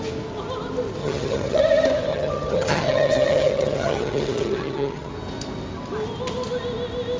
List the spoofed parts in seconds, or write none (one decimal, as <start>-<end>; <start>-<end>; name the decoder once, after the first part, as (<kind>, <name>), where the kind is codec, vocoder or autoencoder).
1.0-1.6 (vocoder, HiFi-GAN); 2.1-5.1